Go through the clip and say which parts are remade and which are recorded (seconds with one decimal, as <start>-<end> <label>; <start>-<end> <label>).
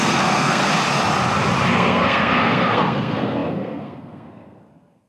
0.0-0.6 remade; 0.6-1.7 recorded; 1.7-5.1 remade